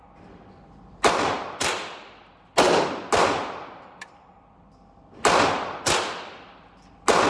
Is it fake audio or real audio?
real